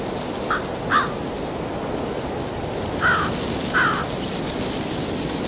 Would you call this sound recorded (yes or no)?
yes